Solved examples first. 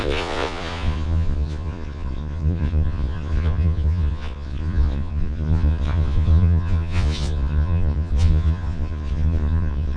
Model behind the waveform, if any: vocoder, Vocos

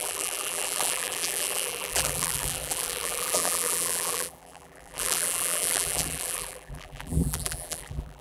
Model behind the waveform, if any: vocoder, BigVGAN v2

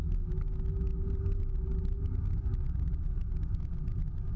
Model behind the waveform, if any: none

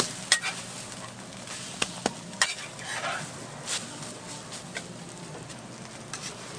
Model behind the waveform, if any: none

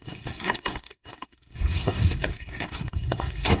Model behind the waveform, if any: codec, SNAC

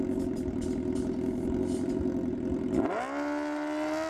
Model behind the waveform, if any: none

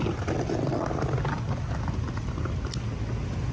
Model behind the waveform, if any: none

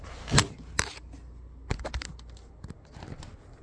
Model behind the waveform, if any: none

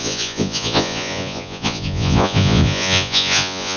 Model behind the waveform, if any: vocoder, Vocos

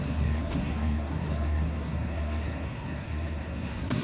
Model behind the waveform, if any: codec, SNAC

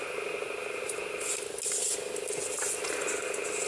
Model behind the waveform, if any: none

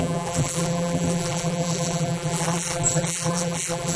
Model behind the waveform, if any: vocoder, BigVGAN v2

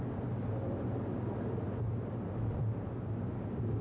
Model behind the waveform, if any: none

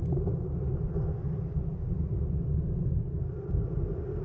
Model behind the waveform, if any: none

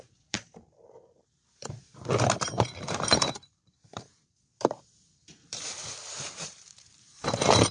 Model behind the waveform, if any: vocoder, BigVGAN v2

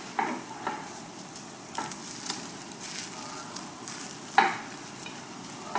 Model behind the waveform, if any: none